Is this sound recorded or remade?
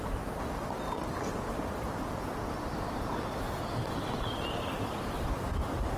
recorded